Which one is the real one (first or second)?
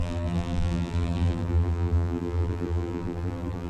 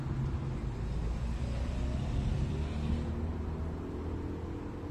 second